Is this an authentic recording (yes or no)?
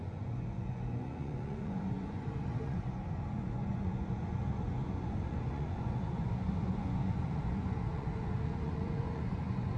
no